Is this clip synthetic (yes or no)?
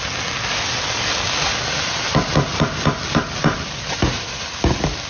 no